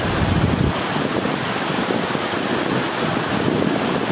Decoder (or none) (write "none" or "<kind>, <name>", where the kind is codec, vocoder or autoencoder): none